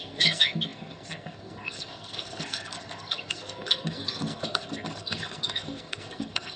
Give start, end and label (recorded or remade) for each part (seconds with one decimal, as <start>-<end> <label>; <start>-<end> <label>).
0.0-6.6 remade